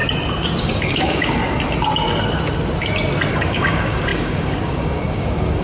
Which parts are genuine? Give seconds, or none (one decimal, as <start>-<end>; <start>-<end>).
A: 0.0-0.6; 1.4-3.3